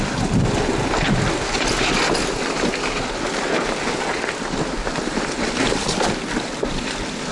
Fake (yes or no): no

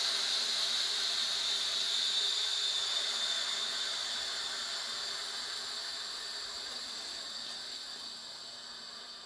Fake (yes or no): no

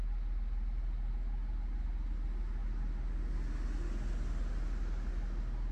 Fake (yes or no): no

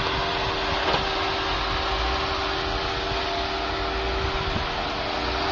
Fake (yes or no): no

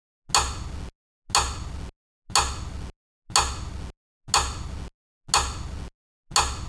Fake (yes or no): no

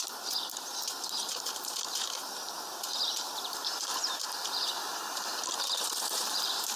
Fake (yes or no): yes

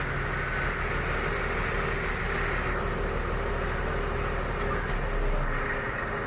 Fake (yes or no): no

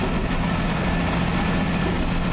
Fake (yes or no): no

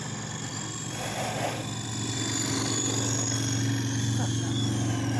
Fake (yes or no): no